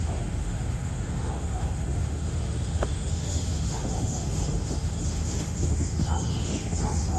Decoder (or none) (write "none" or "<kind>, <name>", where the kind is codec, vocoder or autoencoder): autoencoder, DAC-VAE